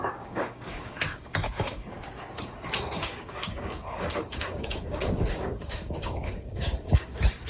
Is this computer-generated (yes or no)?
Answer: yes